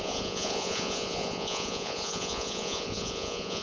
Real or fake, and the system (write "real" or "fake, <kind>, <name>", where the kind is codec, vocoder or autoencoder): fake, vocoder, Vocos